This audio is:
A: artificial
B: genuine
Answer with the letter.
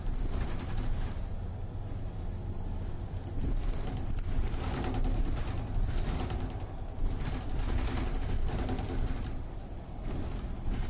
B